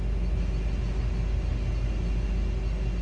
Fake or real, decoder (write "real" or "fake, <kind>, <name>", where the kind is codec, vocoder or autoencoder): real